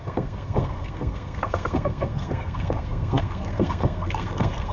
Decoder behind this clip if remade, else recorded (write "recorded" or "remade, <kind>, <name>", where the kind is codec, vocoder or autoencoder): remade, codec, SNAC